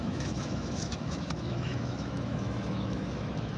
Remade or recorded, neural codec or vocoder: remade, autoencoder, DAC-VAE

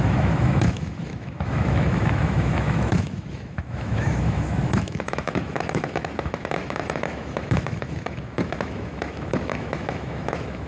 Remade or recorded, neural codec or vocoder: remade, autoencoder, DAC-VAE